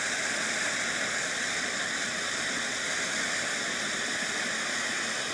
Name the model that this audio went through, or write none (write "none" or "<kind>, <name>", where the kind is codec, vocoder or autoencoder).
vocoder, BigVGAN v2